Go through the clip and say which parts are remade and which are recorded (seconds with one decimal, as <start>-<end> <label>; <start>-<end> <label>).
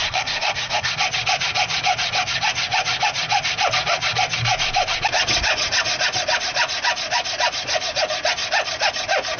0.0-0.9 remade; 0.9-9.4 recorded